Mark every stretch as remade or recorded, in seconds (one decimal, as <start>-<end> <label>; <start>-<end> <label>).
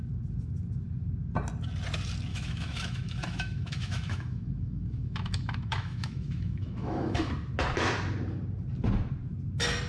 0.0-2.3 recorded; 2.3-7.3 remade; 7.3-9.9 recorded